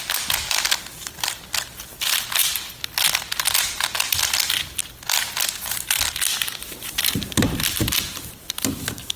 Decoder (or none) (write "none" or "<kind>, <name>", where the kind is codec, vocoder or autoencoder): none